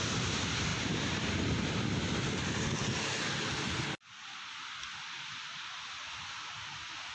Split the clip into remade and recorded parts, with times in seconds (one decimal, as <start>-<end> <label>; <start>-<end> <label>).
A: 0.0-7.1 recorded